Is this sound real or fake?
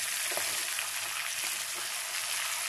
real